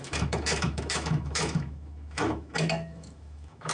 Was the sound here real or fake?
fake